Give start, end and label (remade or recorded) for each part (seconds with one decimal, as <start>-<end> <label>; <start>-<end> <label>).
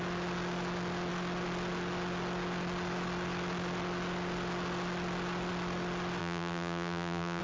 0.0-6.2 recorded; 6.2-7.4 remade